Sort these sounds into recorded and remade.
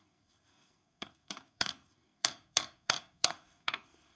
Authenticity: remade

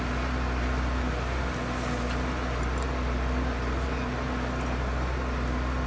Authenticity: recorded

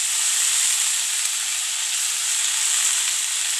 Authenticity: recorded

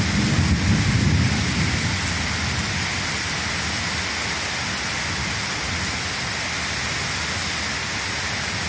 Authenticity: recorded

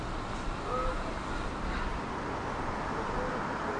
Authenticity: recorded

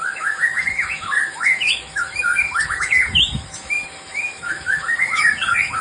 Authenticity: remade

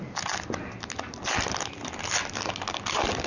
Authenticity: recorded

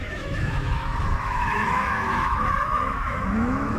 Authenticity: remade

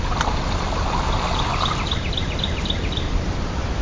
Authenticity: recorded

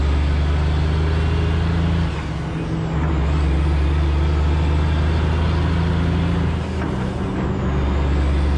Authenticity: recorded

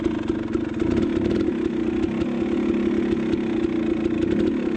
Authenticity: recorded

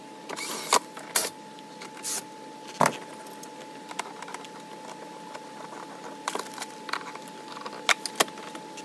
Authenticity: recorded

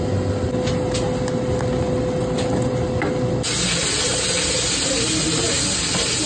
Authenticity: recorded